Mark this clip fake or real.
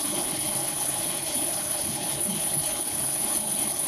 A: fake